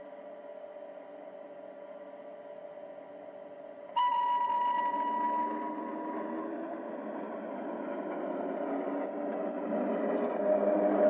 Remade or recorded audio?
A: recorded